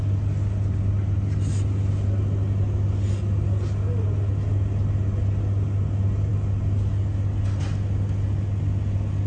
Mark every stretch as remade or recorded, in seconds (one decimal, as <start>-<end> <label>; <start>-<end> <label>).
0.0-9.3 recorded